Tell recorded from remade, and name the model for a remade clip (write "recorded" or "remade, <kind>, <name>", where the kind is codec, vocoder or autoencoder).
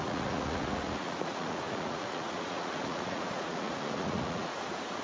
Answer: remade, vocoder, Vocos